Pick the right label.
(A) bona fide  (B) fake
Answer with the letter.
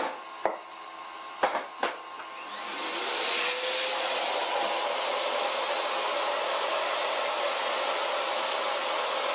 A